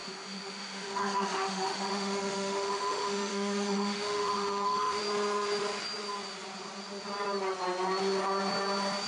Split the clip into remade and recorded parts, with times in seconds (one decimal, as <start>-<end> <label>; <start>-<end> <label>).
0.0-5.0 remade; 5.0-9.1 recorded